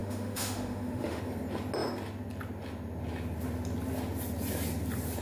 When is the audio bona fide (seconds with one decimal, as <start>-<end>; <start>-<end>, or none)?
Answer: 1.2-5.2